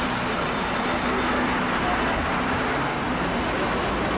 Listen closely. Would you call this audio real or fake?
real